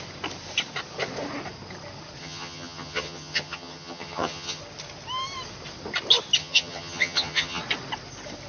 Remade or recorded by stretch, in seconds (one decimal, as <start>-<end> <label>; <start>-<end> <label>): 0.0-2.2 recorded; 2.2-4.6 remade; 4.6-6.4 recorded; 6.4-7.6 remade; 7.6-8.5 recorded